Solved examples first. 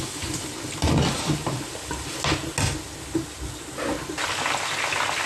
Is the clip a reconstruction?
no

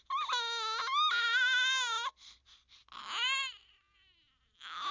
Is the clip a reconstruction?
no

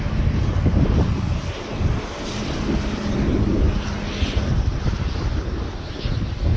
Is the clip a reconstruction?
no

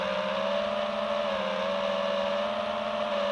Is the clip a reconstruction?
no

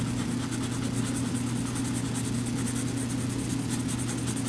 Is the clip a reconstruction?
no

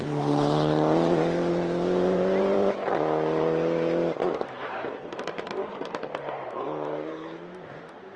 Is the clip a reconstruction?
yes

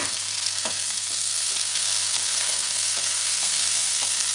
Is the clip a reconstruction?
yes